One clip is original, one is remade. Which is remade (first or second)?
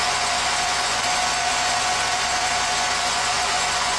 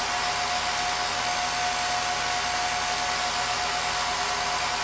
first